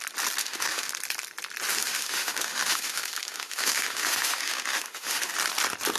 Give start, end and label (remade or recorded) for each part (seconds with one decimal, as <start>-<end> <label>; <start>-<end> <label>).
0.0-0.4 recorded; 0.4-0.9 remade; 0.9-1.7 recorded; 1.7-5.3 remade; 5.3-6.0 recorded